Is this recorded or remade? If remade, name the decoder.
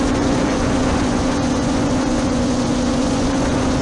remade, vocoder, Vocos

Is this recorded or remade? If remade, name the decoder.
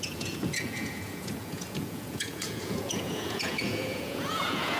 remade, vocoder, Vocos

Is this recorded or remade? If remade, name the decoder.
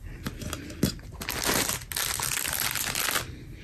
recorded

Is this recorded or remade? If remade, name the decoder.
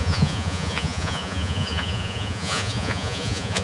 remade, vocoder, Vocos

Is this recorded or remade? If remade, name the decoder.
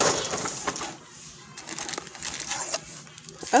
recorded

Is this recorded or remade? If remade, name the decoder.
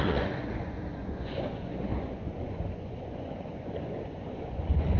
remade, vocoder, Vocos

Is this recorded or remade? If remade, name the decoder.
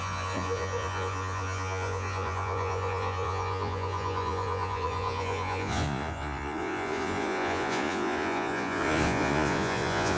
remade, vocoder, Vocos